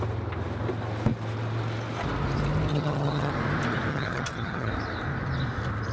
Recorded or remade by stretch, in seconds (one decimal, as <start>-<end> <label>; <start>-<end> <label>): 0.0-2.7 recorded; 2.7-3.3 remade; 3.3-3.9 recorded; 3.9-4.7 remade; 4.7-5.9 recorded